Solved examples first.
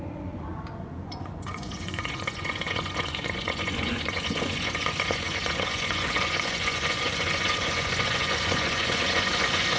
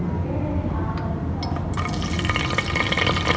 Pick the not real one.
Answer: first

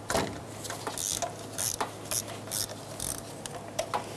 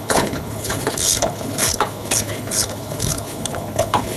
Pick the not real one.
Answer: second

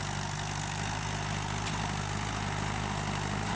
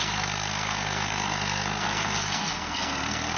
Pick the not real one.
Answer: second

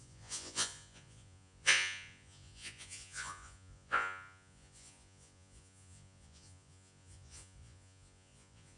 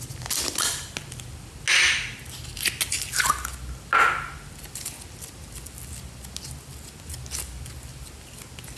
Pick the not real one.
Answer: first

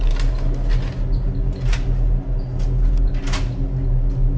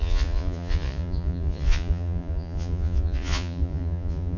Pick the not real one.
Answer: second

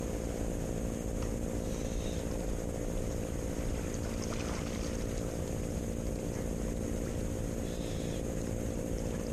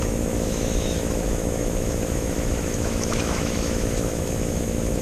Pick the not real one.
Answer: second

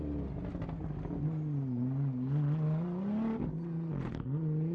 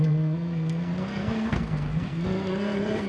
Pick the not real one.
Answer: second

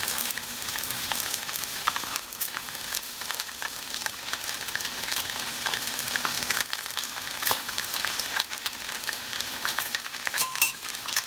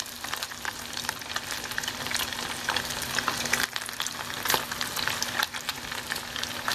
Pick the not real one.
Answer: first